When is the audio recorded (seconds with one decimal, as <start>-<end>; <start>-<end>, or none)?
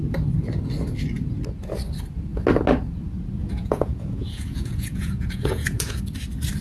0.0-3.4; 6.0-6.6